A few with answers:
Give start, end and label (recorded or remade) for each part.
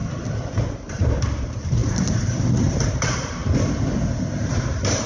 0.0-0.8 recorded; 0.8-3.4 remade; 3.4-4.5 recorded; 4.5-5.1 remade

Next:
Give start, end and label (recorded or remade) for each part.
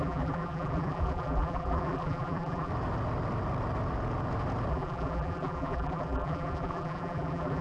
0.0-2.7 remade; 2.7-4.7 recorded; 4.7-7.6 remade